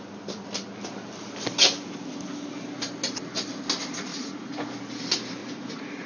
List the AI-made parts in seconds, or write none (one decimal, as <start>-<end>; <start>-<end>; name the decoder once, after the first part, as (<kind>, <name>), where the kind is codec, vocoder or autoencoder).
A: 4.1-4.7 (vocoder, Vocos); 5.4-6.1